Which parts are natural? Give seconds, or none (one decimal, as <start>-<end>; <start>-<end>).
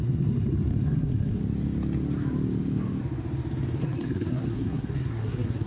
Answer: 1.4-3.8